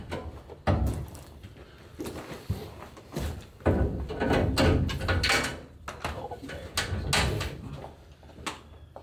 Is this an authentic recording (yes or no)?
yes